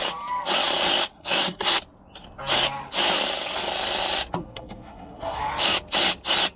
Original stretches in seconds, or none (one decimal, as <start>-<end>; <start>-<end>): 0.0-1.1; 1.8-4.4; 5.4-6.6

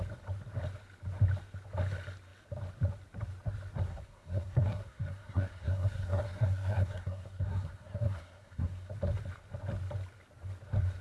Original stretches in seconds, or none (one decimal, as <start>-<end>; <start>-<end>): 0.0-3.9; 8.9-11.0

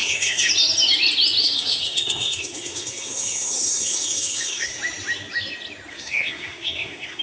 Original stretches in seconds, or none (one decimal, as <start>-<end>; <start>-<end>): 0.5-1.4; 4.8-5.9

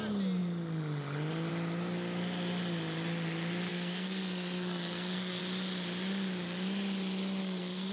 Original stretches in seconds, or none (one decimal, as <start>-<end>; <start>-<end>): 0.0-3.7; 5.4-7.4

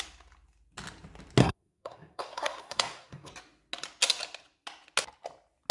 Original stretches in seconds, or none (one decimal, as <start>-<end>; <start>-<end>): 0.0-1.4; 3.3-5.7

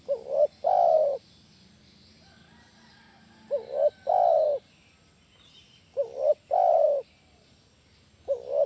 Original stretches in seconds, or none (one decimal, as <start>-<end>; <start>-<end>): 0.0-8.7

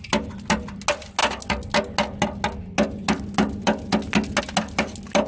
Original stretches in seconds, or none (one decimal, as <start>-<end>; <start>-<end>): 0.0-5.3